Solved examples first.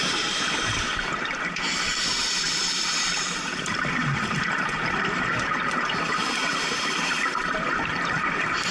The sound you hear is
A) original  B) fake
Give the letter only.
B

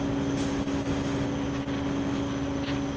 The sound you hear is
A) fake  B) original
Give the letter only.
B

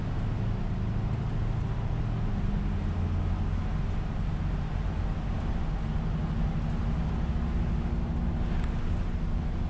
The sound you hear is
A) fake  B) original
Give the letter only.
B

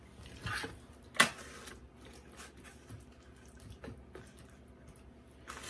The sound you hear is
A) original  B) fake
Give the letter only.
A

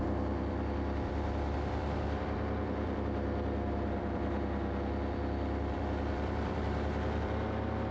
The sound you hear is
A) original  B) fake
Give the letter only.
B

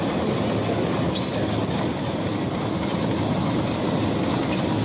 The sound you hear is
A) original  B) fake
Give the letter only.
A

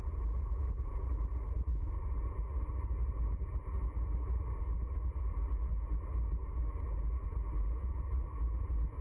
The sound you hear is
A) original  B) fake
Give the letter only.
B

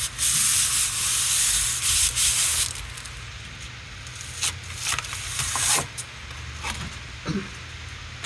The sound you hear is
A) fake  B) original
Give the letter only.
B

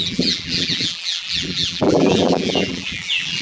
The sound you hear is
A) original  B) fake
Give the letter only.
B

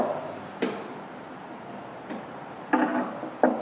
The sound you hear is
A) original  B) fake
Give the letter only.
A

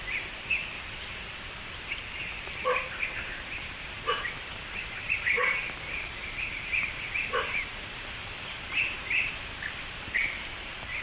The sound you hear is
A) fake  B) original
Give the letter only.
A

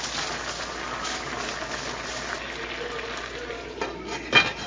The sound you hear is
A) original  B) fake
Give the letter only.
A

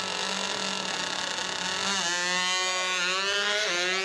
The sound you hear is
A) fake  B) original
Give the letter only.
B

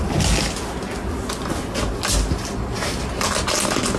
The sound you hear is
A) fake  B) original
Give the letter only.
B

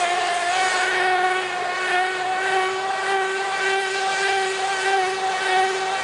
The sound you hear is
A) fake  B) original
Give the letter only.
B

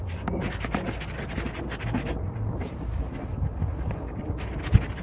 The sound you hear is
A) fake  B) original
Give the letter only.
B